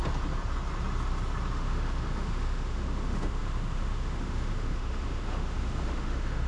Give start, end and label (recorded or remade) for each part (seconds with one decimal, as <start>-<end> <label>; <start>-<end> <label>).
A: 0.0-1.5 recorded; 1.5-6.5 remade